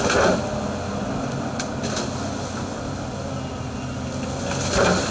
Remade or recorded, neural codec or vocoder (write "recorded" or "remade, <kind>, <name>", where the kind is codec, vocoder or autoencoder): remade, vocoder, BigVGAN v2